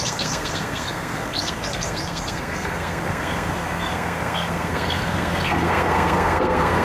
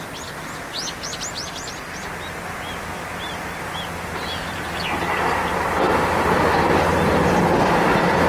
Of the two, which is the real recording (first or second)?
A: second